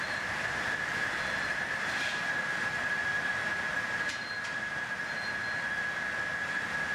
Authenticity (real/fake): fake